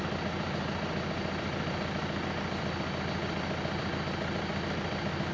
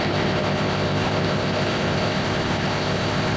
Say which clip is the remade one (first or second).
second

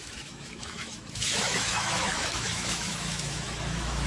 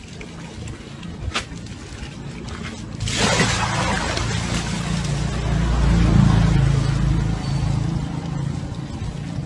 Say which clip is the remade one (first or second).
first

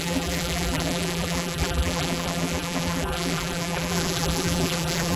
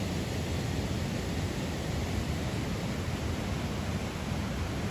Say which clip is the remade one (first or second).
first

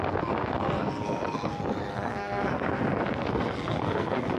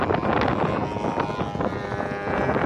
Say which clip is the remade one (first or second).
first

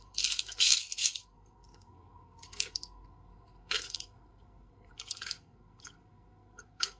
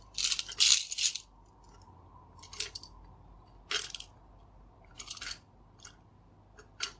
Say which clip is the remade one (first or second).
first